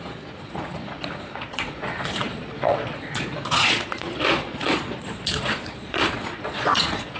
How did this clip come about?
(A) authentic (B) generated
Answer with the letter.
B